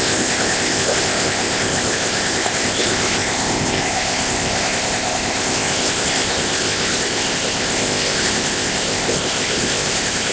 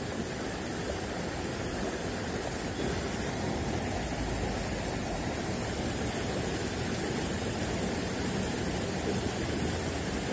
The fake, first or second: first